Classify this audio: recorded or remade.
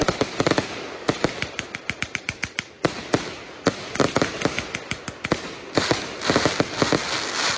recorded